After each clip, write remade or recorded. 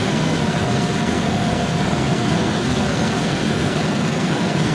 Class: remade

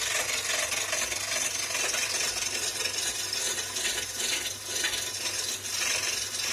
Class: recorded